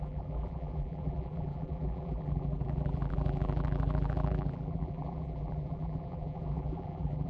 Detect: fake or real fake